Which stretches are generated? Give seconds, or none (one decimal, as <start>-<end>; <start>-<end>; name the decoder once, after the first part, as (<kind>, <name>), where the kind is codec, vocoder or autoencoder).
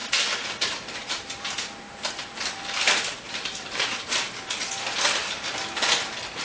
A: 0.0-3.8 (vocoder, BigVGAN v2); 5.2-6.4